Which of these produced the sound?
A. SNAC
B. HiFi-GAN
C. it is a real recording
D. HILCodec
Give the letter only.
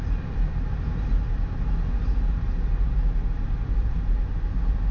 C